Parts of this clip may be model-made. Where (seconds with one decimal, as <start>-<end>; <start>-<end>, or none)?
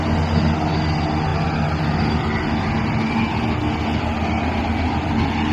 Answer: none